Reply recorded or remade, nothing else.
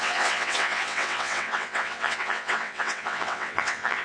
remade